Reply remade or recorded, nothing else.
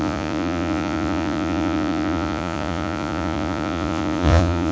remade